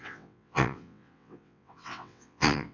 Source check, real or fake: fake